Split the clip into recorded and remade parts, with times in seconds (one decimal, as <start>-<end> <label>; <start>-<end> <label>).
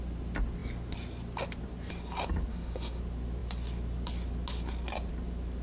0.0-2.5 recorded; 2.5-3.0 remade; 3.0-5.6 recorded